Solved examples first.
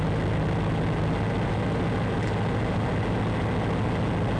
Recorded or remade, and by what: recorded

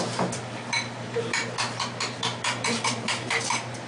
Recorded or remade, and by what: remade, vocoder, BigVGAN v2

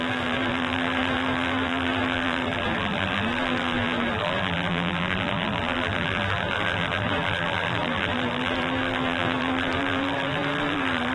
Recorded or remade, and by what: remade, vocoder, BigVGAN v2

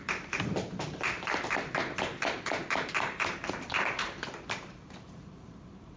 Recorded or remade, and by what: remade, vocoder, BigVGAN v2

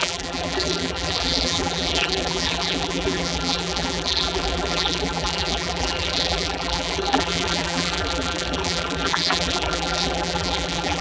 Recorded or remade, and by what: remade, vocoder, BigVGAN v2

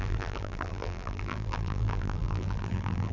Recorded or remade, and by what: remade, vocoder, BigVGAN v2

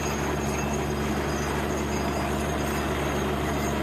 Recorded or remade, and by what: recorded